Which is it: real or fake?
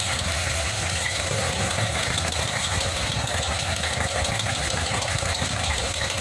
fake